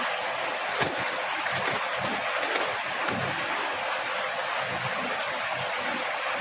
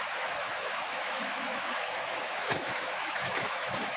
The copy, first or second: second